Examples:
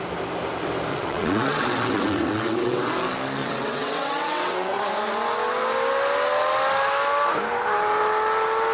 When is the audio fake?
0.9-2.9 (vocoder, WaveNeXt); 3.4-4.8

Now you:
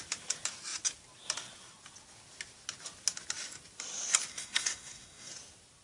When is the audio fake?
4.3-5.3 (codec, SNAC)

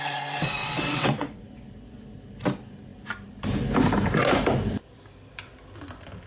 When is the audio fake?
0.6-1.4 (vocoder, WaveNeXt)

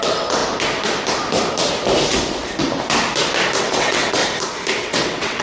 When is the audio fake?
0.0-0.4 (vocoder, WaveNeXt); 3.6-4.2; 4.8-5.4

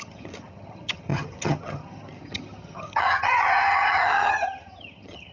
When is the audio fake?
0.0-5.3 (vocoder, HiFi-GAN)

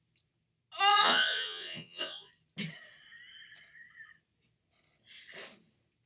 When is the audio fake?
0.9-2.3 (vocoder, Vocos)

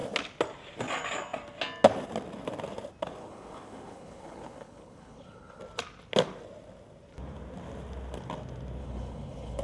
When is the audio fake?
3.2-5.6 (codec, HILCodec); 8.8-9.6

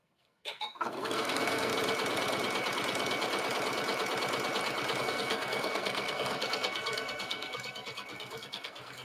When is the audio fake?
0.0-1.7 (codec, SNAC); 5.0-9.0